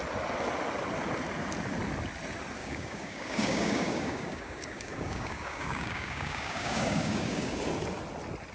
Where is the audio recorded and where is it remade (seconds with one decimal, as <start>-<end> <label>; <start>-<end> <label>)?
0.0-2.6 recorded; 2.6-7.6 remade; 7.6-8.5 recorded